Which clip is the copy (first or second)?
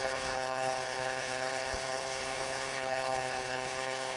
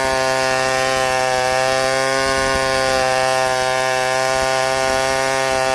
first